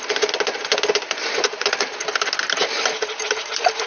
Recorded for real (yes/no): yes